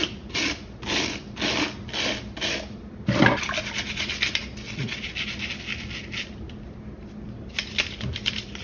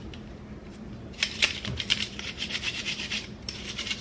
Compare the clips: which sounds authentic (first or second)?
first